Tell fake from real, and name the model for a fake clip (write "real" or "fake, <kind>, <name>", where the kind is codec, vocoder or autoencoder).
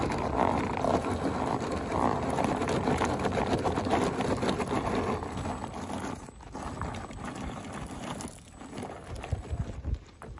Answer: real